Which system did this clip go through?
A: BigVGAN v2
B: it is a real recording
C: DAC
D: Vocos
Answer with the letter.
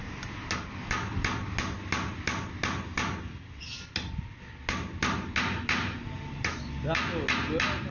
B